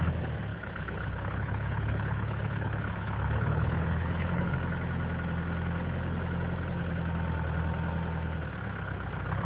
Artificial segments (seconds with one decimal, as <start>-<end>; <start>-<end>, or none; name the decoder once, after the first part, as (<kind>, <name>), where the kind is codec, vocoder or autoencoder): 0.5-4.5 (codec, HILCodec)